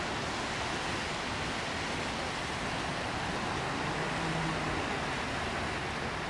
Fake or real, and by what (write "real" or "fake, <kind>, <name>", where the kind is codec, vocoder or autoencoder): real